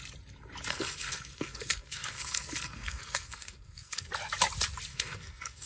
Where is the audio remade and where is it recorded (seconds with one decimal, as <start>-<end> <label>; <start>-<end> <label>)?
0.0-0.7 recorded; 0.7-4.1 remade; 4.1-4.9 recorded; 4.9-5.7 remade